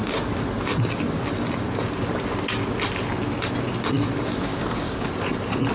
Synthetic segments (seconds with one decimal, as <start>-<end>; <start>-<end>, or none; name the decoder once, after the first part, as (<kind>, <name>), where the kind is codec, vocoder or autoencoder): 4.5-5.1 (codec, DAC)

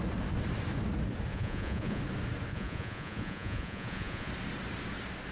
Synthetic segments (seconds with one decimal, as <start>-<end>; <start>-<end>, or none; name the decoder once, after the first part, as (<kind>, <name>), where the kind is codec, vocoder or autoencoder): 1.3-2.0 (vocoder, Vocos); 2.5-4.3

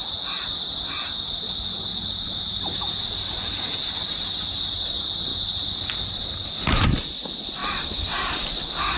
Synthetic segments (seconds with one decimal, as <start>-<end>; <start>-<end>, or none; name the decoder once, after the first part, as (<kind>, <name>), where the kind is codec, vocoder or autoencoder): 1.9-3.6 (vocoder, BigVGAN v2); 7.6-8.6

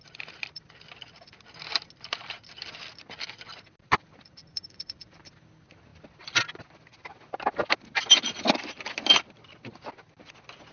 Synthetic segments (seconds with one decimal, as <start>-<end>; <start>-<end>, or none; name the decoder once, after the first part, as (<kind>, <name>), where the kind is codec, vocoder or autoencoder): 4.4-5.2 (vocoder, BigVGAN v2)